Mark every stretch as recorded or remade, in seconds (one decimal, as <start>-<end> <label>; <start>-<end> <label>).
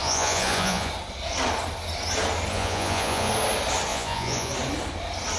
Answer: 0.0-0.9 remade; 0.9-2.5 recorded; 2.5-3.3 remade; 3.3-3.9 recorded; 3.9-4.5 remade; 4.5-5.4 recorded